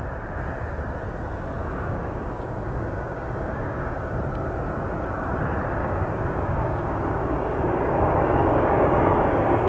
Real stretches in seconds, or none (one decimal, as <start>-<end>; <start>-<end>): 0.0-1.6; 4.1-5.8